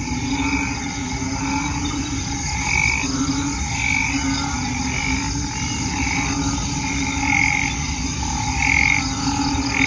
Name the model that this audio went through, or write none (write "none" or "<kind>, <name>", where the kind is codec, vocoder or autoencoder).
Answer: none